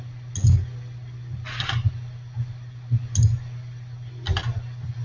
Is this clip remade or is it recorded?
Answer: recorded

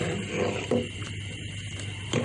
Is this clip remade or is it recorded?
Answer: recorded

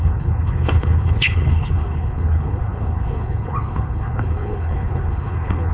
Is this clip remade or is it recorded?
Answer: remade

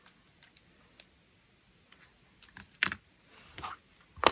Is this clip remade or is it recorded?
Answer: recorded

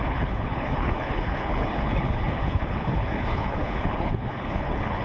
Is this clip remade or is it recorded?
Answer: remade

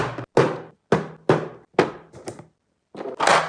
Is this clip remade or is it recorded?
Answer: recorded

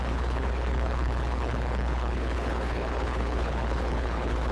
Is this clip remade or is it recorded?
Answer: remade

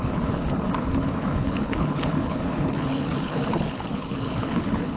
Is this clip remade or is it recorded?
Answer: remade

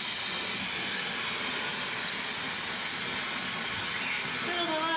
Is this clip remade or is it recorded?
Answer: recorded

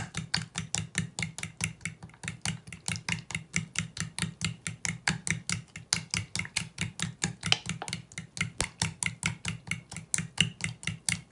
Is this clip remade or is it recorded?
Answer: recorded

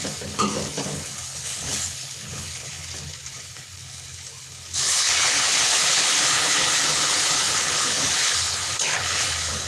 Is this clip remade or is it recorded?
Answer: remade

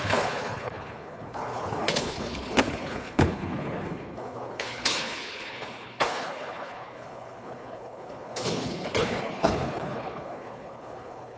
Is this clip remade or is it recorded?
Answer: remade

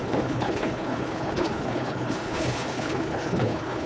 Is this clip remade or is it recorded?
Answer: remade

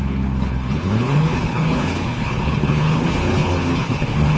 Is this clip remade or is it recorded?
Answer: remade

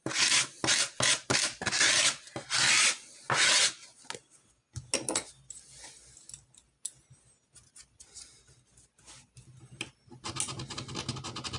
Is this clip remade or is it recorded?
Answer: recorded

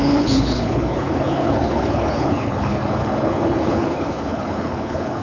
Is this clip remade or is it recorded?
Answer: remade